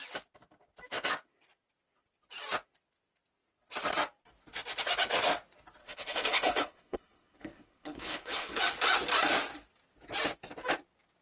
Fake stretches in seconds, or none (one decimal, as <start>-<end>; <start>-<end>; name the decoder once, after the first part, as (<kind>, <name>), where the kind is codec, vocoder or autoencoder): 5.8-8.6 (codec, HILCodec)